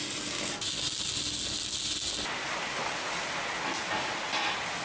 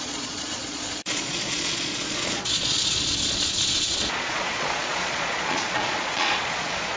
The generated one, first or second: second